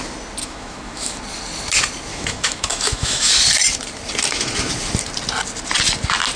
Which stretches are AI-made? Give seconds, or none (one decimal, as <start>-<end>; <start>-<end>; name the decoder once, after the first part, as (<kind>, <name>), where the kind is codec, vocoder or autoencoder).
0.4-1.2 (autoencoder, DAC-VAE); 2.1-3.3